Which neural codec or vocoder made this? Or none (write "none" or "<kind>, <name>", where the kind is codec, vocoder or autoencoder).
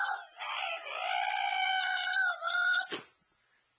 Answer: none